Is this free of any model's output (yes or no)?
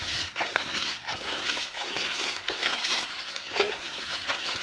no